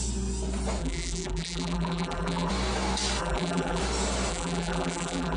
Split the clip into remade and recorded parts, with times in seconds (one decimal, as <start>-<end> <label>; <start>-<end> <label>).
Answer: 0.0-0.8 recorded; 0.8-2.5 remade; 2.5-3.2 recorded; 3.2-3.8 remade; 3.8-4.3 recorded; 4.3-5.4 remade